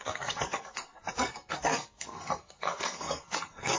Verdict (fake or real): fake